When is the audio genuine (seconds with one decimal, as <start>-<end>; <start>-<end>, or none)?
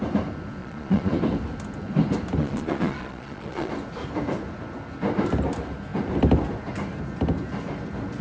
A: 0.0-0.6; 1.2-2.4; 3.7-8.2